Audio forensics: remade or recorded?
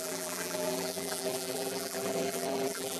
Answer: remade